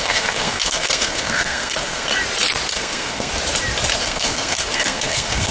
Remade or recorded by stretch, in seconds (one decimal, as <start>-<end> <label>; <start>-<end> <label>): 0.0-2.1 remade; 2.1-2.7 recorded; 2.7-3.3 remade; 3.3-4.0 recorded; 4.0-5.5 remade